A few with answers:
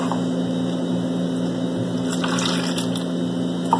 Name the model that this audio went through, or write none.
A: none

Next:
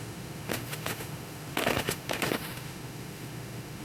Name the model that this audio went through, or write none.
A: autoencoder, DAC-VAE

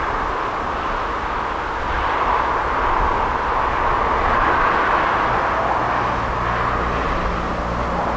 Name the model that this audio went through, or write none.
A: none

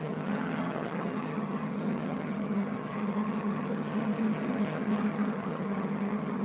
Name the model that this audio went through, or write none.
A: vocoder, HiFi-GAN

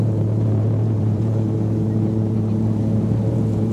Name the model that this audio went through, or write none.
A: vocoder, BigVGAN v2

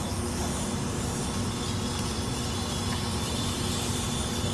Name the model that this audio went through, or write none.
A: none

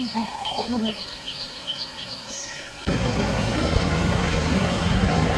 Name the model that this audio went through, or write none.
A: codec, SNAC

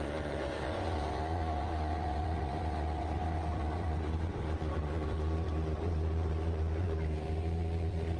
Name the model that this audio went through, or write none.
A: vocoder, Vocos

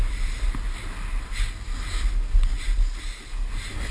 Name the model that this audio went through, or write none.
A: none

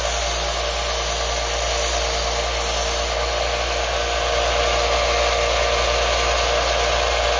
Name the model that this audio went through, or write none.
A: none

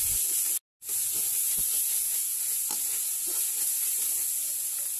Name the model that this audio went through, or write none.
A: none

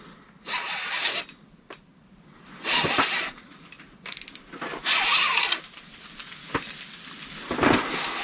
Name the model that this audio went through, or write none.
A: none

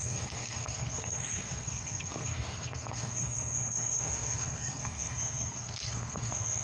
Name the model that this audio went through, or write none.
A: codec, SNAC